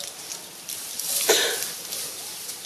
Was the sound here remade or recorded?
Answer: recorded